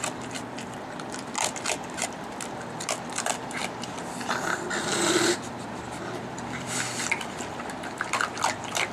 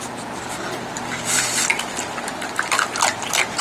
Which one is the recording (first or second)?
second